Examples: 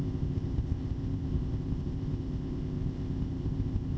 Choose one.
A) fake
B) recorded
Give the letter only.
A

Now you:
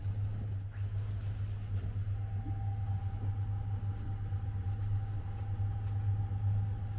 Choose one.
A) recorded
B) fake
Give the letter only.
A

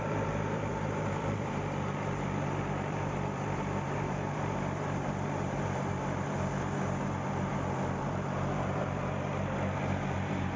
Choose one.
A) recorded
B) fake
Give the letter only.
B